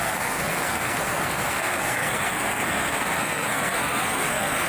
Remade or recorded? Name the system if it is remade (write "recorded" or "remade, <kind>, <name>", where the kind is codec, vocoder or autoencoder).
remade, codec, SNAC